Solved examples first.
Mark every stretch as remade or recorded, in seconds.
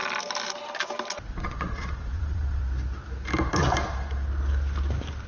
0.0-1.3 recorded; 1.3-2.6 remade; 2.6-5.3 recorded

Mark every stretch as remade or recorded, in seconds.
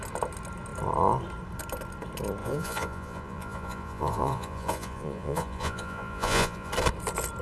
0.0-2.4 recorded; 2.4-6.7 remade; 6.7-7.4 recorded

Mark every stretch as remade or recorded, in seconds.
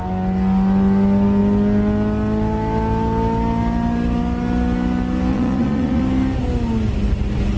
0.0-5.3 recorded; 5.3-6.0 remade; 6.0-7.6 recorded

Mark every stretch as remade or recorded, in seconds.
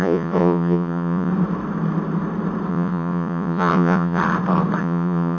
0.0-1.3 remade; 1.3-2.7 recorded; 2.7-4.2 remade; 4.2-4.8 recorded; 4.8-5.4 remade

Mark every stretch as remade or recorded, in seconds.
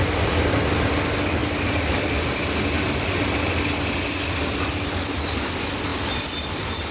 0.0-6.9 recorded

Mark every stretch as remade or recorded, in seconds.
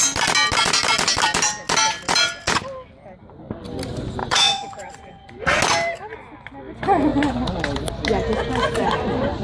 0.0-4.2 recorded; 4.2-5.3 remade; 5.3-9.4 recorded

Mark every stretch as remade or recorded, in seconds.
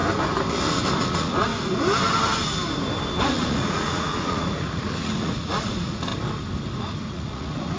0.0-1.0 recorded; 1.0-1.5 remade; 1.5-3.2 recorded; 3.2-6.1 remade; 6.1-6.8 recorded; 6.8-7.8 remade